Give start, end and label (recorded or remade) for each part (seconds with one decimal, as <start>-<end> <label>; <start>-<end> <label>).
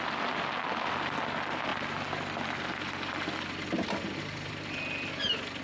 0.0-5.6 recorded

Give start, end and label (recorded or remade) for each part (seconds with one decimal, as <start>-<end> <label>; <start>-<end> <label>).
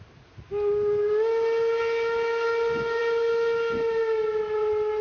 0.0-5.0 recorded